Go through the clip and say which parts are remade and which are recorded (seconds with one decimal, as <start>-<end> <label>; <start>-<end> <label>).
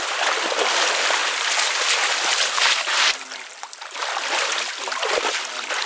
0.0-1.2 remade; 1.2-2.5 recorded; 2.5-5.9 remade